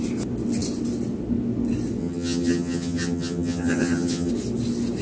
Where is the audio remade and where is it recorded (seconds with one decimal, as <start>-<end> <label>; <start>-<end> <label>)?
0.0-2.0 recorded; 2.0-4.3 remade; 4.3-5.0 recorded